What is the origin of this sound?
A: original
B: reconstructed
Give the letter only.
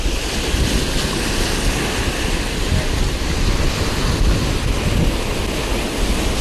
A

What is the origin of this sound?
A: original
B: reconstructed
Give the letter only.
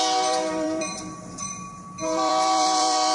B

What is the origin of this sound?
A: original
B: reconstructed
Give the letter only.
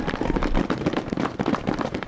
B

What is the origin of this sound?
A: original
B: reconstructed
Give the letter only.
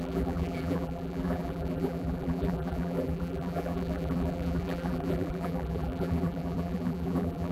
B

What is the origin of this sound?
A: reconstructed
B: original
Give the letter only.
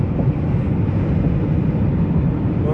B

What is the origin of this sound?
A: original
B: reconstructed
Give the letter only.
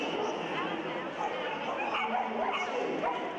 A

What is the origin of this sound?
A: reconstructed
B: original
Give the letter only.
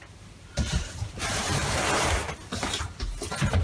A